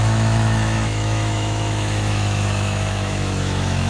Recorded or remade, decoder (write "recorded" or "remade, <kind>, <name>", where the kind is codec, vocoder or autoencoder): remade, autoencoder, DAC-VAE